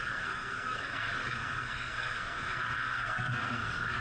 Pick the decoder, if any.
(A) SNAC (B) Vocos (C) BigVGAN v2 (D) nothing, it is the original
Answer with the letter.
A